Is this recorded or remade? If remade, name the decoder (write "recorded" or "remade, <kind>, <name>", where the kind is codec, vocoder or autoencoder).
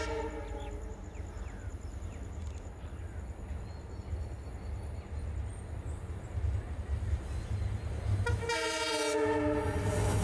recorded